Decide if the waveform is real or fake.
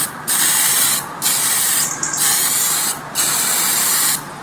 fake